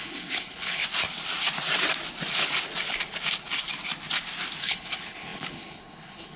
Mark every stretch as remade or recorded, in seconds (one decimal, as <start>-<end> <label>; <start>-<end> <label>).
0.0-0.8 remade; 0.8-4.6 recorded; 4.6-6.4 remade